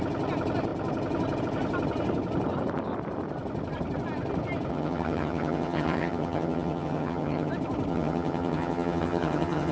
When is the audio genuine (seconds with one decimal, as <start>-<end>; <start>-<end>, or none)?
0.0-4.7; 7.5-7.9